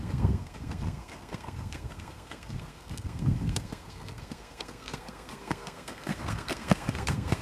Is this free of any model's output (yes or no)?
no